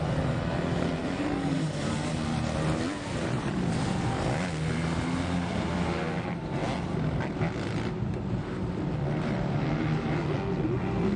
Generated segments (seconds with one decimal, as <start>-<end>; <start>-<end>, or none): none